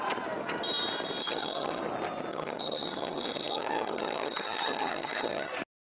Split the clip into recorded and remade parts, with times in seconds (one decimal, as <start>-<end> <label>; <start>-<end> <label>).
0.0-1.2 recorded; 1.2-1.8 remade; 1.8-2.3 recorded; 2.3-5.5 remade; 5.5-5.9 recorded